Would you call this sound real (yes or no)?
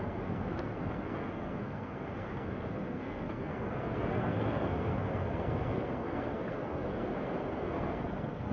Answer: no